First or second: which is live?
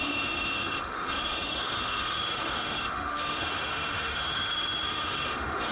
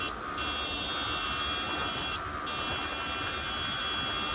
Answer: second